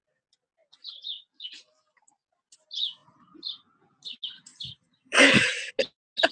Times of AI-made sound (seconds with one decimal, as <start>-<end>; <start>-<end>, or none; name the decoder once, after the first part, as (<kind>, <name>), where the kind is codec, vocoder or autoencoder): 0.6-1.2 (vocoder, BigVGAN v2); 4.5-5.7